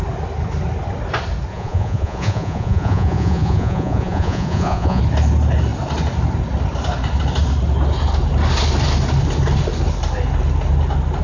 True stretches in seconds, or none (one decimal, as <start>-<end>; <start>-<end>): 0.0-1.5; 5.0-11.2